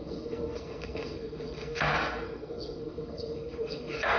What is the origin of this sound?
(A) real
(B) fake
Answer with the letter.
B